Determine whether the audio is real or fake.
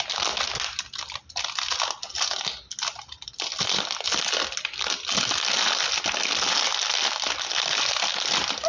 real